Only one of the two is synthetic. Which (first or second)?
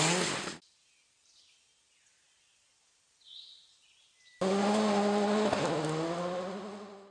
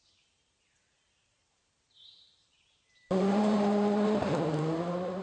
second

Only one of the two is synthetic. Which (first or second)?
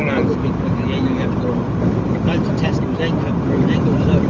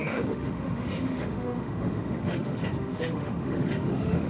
second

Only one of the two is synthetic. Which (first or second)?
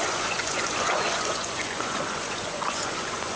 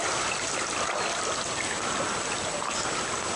first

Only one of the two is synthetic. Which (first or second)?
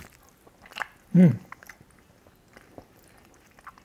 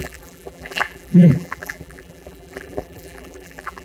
second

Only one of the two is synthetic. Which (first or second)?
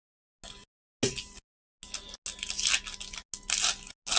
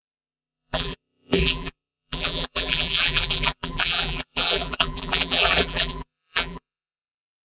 second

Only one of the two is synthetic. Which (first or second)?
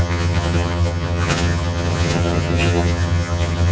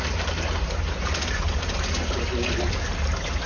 first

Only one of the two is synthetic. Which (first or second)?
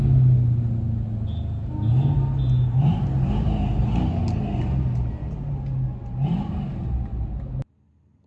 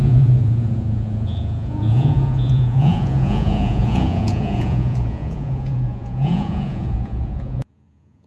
second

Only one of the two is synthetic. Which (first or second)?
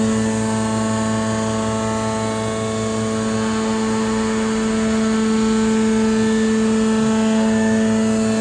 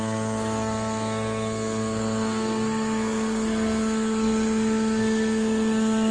second